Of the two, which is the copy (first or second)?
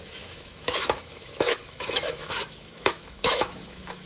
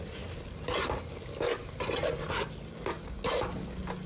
first